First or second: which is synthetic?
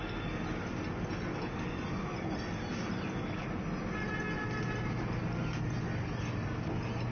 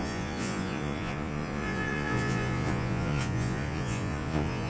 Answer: second